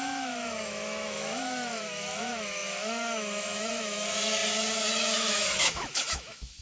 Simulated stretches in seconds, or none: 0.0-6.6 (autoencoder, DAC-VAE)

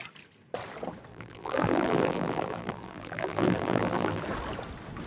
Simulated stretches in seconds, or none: 1.1-4.2 (vocoder, BigVGAN v2)